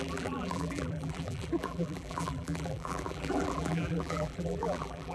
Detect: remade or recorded remade